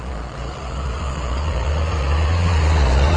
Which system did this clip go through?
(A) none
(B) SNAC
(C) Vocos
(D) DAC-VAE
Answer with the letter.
C